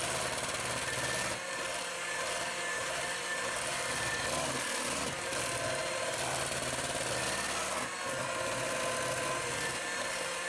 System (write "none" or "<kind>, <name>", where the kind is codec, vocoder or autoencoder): none